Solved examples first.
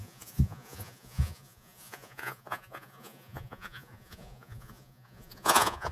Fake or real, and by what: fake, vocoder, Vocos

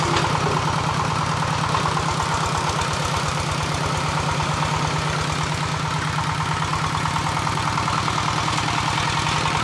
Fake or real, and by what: real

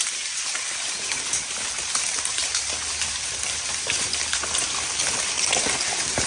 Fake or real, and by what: real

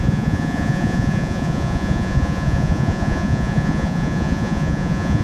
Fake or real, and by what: fake, vocoder, Vocos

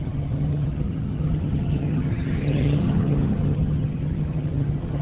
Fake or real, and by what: fake, vocoder, HiFi-GAN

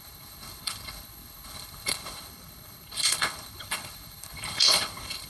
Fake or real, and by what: fake, codec, HILCodec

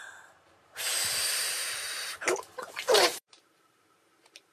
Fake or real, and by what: fake, vocoder, BigVGAN v2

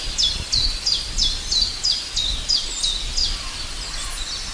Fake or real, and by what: real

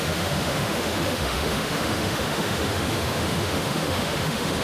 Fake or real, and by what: fake, autoencoder, DAC-VAE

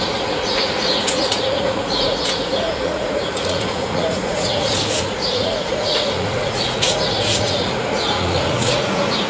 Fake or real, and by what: fake, vocoder, Vocos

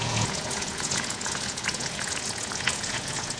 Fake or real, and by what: fake, vocoder, Vocos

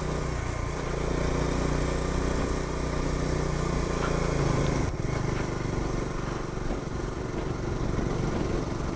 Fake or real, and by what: real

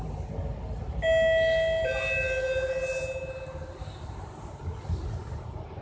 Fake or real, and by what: real